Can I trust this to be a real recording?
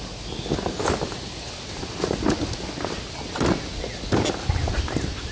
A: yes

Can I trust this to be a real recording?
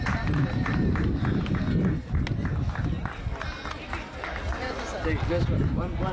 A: yes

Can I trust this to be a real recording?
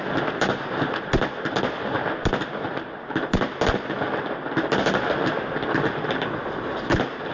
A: yes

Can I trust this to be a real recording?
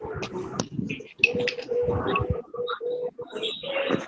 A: yes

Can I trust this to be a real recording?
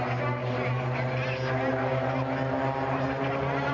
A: yes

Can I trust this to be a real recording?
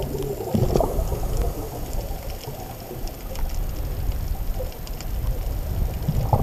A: yes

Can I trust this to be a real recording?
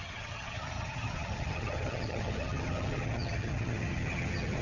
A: no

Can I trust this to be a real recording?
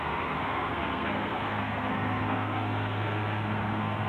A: no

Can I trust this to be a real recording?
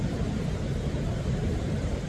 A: yes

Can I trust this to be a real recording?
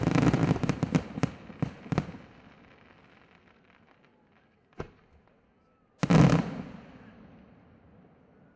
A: yes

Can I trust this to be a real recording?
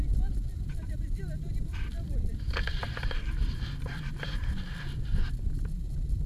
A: no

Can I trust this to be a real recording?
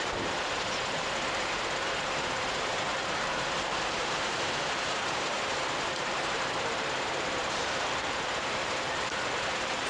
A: no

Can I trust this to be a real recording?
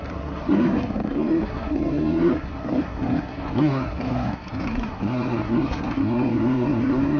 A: no